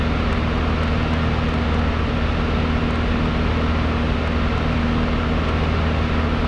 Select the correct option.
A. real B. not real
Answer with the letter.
A